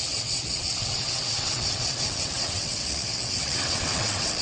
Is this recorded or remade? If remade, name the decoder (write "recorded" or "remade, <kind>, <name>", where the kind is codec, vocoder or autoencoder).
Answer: remade, vocoder, WaveNeXt